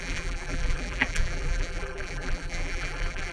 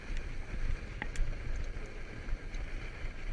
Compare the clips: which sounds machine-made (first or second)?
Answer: first